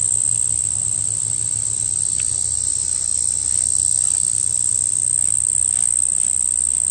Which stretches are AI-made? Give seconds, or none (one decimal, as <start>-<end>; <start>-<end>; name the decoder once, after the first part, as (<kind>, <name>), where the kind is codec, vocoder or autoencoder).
none